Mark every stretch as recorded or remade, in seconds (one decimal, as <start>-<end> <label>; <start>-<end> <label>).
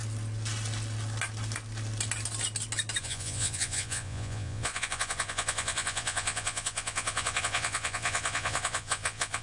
0.0-3.0 recorded; 3.0-9.4 remade